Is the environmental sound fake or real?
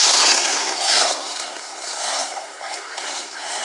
fake